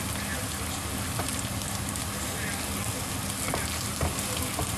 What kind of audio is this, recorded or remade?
recorded